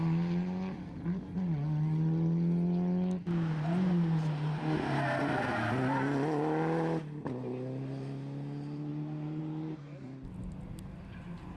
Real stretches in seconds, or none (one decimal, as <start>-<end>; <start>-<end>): 0.0-11.6